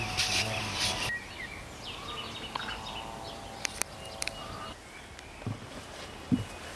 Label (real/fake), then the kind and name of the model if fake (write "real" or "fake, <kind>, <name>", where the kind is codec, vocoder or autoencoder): real